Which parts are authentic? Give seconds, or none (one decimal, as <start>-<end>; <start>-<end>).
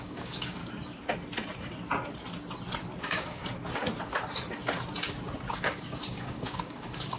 0.6-3.0; 3.4-5.5